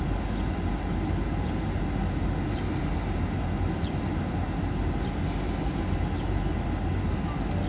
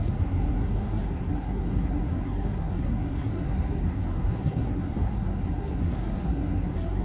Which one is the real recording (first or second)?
first